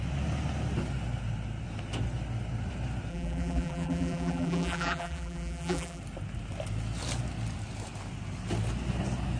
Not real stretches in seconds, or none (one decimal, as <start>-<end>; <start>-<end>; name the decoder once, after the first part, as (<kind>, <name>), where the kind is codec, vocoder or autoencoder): 3.1-6.0 (vocoder, BigVGAN v2)

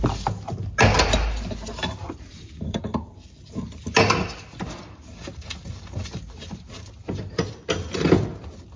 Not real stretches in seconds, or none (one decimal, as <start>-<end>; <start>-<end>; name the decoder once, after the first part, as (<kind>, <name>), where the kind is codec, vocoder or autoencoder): 2.0-2.8 (vocoder, BigVGAN v2); 6.0-7.4

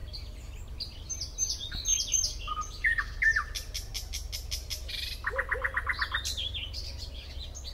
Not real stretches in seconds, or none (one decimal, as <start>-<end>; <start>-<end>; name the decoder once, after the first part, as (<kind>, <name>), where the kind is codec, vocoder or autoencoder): none

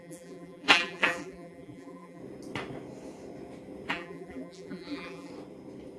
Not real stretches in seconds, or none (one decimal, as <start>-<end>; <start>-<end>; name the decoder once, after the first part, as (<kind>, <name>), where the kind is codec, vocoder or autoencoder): 0.0-2.2 (vocoder, BigVGAN v2); 3.9-5.3

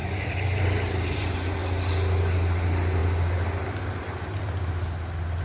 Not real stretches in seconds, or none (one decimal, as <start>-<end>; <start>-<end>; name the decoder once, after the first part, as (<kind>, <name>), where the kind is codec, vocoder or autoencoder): 0.0-1.5 (vocoder, BigVGAN v2)

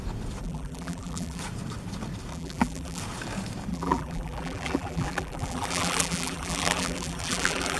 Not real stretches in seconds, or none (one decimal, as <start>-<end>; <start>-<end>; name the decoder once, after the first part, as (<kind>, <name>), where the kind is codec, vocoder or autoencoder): 0.4-1.4 (vocoder, BigVGAN v2); 2.3-3.0; 3.7-7.8